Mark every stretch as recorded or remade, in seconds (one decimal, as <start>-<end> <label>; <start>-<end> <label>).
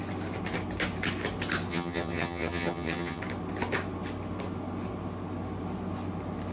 0.0-1.7 recorded; 1.7-3.2 remade; 3.2-6.5 recorded